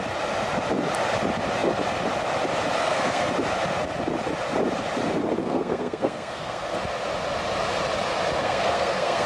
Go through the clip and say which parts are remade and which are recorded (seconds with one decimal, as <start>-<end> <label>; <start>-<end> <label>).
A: 0.0-2.8 recorded; 2.8-3.3 remade; 3.3-5.4 recorded; 5.4-6.8 remade; 6.8-8.4 recorded; 8.4-9.3 remade